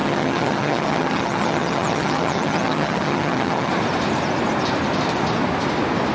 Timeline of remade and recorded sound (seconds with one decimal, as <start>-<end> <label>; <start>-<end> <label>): 0.0-3.7 remade; 3.7-6.1 recorded